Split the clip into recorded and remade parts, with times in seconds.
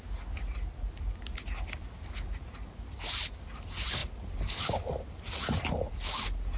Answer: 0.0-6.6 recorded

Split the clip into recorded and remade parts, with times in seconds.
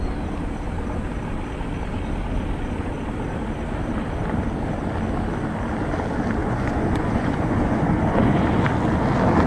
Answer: 0.0-6.4 recorded; 6.4-8.7 remade; 8.7-9.5 recorded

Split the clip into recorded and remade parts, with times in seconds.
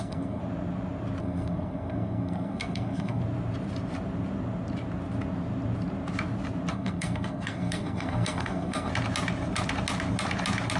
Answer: 0.0-0.4 remade; 0.4-1.2 recorded; 1.2-3.2 remade; 3.2-6.7 recorded; 6.7-8.9 remade; 8.9-10.8 recorded